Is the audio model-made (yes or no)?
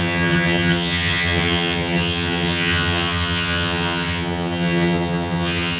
yes